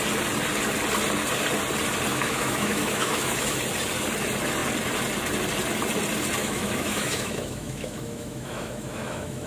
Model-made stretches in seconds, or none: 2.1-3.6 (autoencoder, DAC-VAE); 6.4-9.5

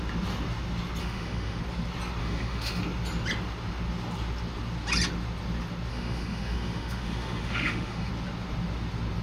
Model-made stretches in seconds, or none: 1.0-1.6 (autoencoder, DAC-VAE); 2.2-2.8; 5.9-8.1

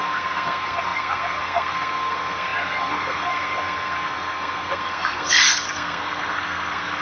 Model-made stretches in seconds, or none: 0.0-7.0 (codec, SNAC)

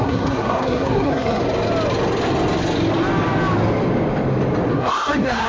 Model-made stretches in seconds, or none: 0.0-1.4 (codec, SNAC); 4.7-5.5

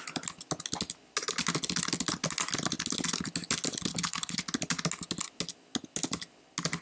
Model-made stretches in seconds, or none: 3.9-4.4 (codec, HILCodec)

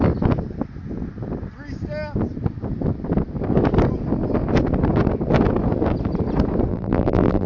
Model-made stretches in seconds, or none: 6.7-7.5 (vocoder, BigVGAN v2)

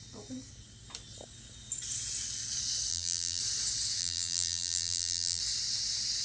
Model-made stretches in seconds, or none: 2.9-3.4 (vocoder, BigVGAN v2); 4.0-5.4